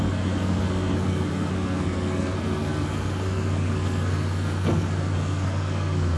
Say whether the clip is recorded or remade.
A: remade